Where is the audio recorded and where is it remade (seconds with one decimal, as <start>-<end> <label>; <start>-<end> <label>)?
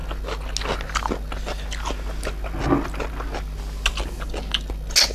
0.0-5.1 recorded